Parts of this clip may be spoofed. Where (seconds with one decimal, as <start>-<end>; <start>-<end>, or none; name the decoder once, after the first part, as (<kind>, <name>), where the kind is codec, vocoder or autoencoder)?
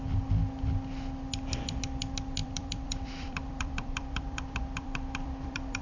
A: 2.4-5.8 (vocoder, BigVGAN v2)